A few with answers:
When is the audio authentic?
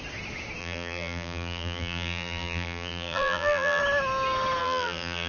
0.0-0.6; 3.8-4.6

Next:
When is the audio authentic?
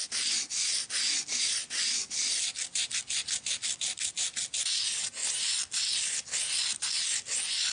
0.0-7.7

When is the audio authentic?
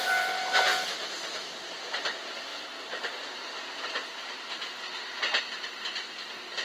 0.7-1.9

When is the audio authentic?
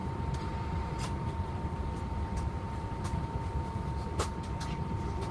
3.2-5.3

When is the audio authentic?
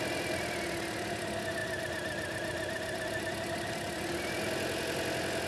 0.0-1.6; 3.7-5.5